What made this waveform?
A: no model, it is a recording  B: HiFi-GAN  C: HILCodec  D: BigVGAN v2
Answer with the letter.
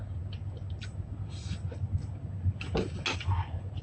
A